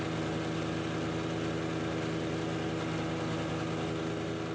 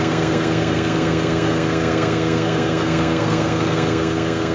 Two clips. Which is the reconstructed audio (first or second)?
second